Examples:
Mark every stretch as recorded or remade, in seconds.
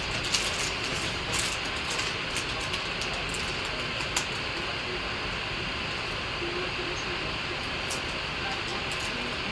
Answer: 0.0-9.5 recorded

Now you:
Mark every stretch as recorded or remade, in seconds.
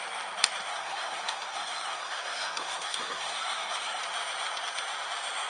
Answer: 0.0-0.7 recorded; 0.7-4.0 remade; 4.0-5.5 recorded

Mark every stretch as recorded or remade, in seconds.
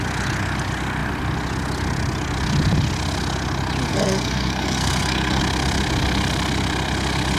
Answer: 0.0-3.9 recorded; 3.9-5.4 remade; 5.4-7.4 recorded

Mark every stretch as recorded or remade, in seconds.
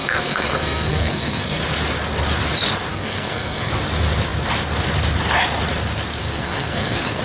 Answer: 0.0-1.6 remade; 1.6-2.9 recorded; 2.9-3.7 remade; 3.7-6.2 recorded; 6.2-7.2 remade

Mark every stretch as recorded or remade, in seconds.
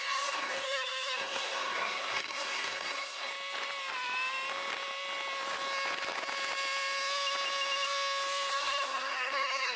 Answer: 0.0-3.3 remade; 3.3-8.5 recorded; 8.5-9.8 remade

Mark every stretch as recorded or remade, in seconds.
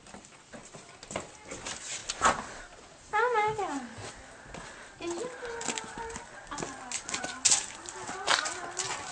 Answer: 0.0-9.1 recorded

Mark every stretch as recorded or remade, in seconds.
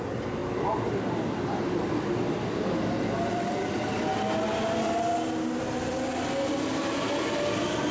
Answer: 0.0-7.9 recorded